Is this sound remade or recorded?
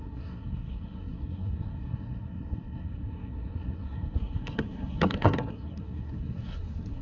remade